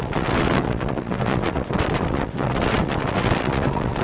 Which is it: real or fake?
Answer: fake